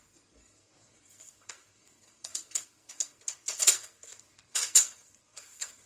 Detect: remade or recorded remade